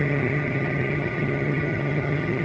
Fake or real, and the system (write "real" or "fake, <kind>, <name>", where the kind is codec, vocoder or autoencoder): fake, vocoder, HiFi-GAN